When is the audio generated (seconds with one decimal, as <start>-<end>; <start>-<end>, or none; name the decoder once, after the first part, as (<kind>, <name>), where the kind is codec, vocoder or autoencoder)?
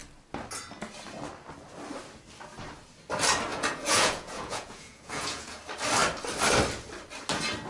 3.5-5.6 (vocoder, Vocos)